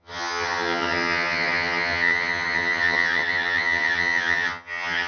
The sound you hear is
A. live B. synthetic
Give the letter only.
B